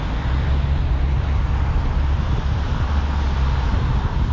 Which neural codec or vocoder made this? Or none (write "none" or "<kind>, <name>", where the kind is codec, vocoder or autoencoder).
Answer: vocoder, BigVGAN v2